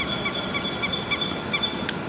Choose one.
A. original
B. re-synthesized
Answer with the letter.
A